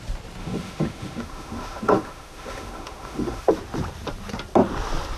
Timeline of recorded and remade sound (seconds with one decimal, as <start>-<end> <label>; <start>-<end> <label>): 0.0-0.4 recorded; 0.4-3.5 remade; 3.5-5.2 recorded